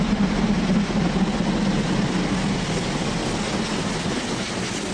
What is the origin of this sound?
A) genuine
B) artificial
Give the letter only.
A